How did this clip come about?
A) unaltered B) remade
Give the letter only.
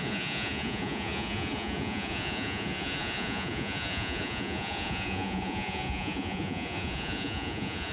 B